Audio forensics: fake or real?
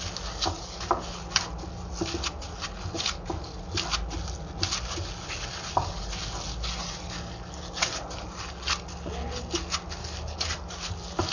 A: real